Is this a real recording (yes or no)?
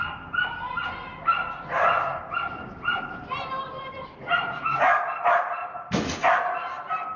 yes